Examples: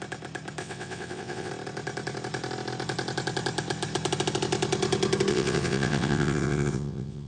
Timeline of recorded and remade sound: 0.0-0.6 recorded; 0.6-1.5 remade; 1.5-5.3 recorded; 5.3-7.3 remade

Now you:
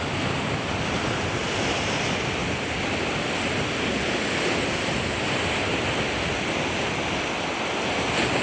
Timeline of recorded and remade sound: 0.0-8.4 recorded

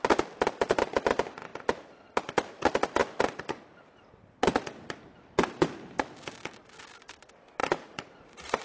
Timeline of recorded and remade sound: 0.0-7.6 recorded; 7.6-8.6 remade